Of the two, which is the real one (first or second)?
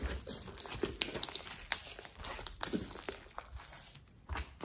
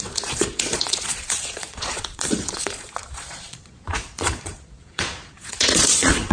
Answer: first